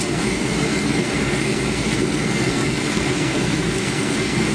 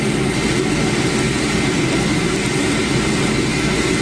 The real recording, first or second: second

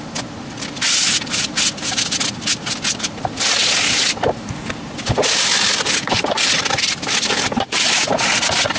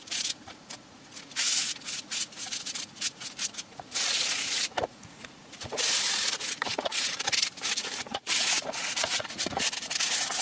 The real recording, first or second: first